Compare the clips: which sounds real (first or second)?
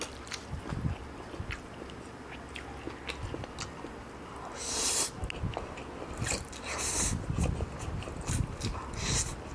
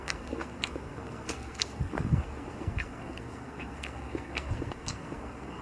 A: first